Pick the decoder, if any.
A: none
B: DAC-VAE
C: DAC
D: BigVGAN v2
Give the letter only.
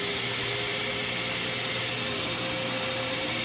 A